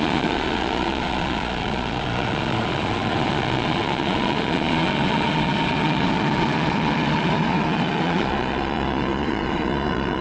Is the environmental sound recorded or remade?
remade